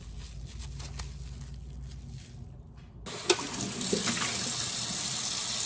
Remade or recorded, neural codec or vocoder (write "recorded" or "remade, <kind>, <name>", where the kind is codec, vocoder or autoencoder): recorded